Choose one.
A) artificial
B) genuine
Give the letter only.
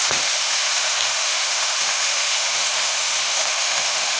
A